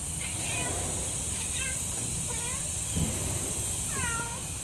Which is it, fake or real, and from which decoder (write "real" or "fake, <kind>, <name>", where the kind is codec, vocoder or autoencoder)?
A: real